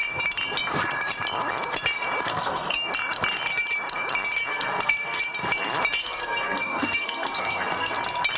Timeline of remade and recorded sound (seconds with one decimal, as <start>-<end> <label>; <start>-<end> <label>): 0.0-2.3 recorded; 2.3-2.9 remade; 2.9-4.5 recorded; 4.5-5.2 remade; 5.2-6.0 recorded; 6.0-7.9 remade; 7.9-8.4 recorded